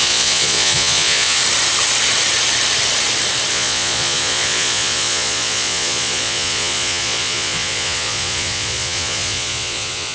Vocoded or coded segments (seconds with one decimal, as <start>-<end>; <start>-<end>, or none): 0.0-1.4; 3.5-10.1